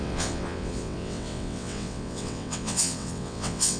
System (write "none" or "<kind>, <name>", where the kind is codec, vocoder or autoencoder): vocoder, WaveNeXt